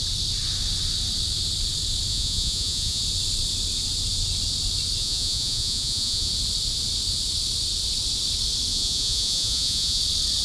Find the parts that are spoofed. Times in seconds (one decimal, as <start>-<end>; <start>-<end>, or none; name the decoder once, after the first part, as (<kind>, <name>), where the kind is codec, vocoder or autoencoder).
2.1-3.0 (vocoder, Vocos); 5.0-6.3; 8.7-10.0